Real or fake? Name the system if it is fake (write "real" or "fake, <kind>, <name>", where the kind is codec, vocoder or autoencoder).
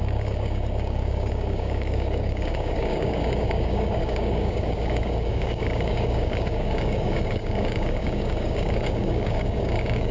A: fake, codec, DAC